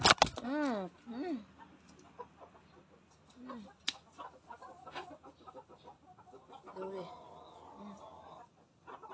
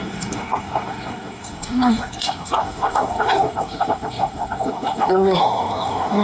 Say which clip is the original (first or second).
first